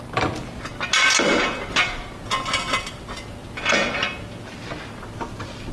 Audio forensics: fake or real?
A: real